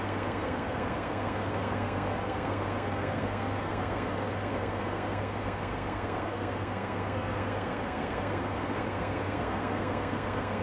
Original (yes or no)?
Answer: no